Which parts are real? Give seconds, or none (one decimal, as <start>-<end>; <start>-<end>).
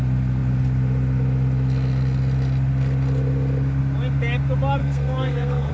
0.0-4.8